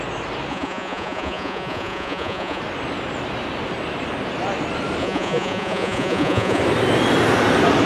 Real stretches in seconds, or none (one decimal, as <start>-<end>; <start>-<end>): 0.0-0.5; 2.6-5.0; 6.6-7.9

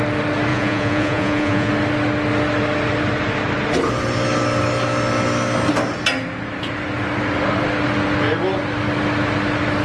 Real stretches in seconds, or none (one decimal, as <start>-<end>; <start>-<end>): 0.0-0.5; 1.7-9.8

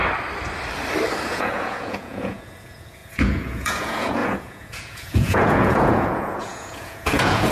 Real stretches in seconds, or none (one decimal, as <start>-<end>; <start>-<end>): 0.0-1.3

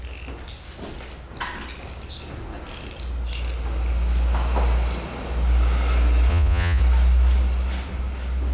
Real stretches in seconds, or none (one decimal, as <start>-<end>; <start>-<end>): 0.0-6.3; 6.8-8.5

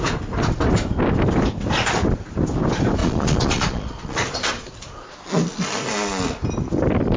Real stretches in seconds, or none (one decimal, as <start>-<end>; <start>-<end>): 0.0-3.0; 4.7-7.2

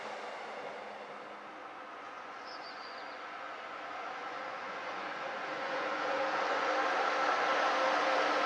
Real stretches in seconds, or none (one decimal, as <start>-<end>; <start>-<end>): 0.0-1.6; 6.7-8.5

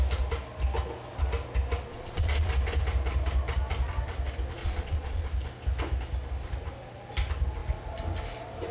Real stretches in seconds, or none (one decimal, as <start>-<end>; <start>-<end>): 0.0-1.9; 2.5-4.6; 5.3-8.7